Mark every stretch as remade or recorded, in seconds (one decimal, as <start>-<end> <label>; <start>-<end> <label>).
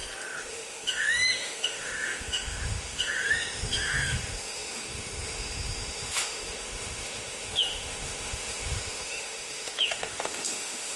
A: 0.0-0.5 recorded; 0.5-11.0 remade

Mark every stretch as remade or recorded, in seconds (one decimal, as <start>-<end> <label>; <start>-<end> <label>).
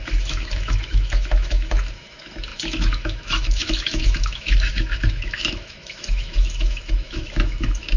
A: 0.0-8.0 remade